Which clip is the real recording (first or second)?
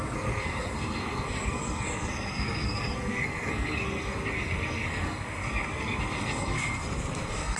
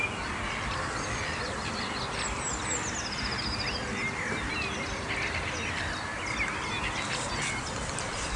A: second